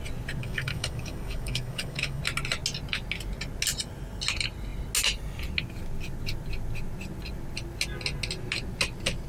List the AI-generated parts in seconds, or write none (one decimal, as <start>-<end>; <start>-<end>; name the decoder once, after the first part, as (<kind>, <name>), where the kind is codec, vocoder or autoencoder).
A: 0.4-2.2 (codec, DAC)

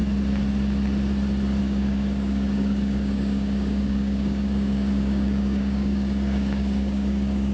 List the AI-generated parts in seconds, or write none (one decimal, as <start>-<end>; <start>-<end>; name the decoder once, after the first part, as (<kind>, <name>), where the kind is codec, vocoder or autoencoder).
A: 1.6-7.5 (codec, DAC)

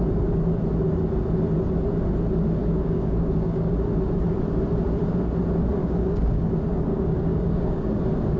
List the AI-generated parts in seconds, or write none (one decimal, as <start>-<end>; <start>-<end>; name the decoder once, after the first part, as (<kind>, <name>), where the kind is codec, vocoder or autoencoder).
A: 2.6-3.7 (codec, DAC); 5.8-6.5; 6.9-8.0

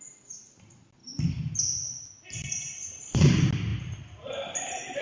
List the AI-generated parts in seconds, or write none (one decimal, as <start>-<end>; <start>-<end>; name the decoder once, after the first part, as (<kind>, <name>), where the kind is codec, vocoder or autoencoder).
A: none

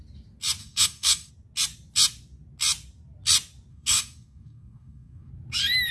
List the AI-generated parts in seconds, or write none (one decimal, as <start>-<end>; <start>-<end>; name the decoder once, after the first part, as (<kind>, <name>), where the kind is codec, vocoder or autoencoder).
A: 0.6-1.3 (codec, DAC); 3.7-5.3